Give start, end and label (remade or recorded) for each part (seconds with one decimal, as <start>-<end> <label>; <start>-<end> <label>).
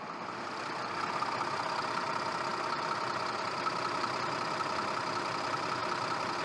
0.0-6.4 recorded